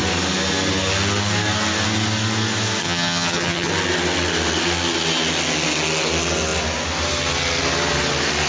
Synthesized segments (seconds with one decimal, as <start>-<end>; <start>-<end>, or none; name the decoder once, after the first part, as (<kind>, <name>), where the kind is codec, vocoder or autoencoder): 2.8-3.7 (vocoder, HiFi-GAN)